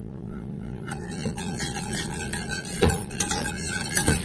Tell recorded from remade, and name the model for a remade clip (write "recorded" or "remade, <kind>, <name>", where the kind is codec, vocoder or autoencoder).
remade, vocoder, Vocos